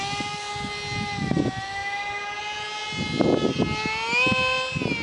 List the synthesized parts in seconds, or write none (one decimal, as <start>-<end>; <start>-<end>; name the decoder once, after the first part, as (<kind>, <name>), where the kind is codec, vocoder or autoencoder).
none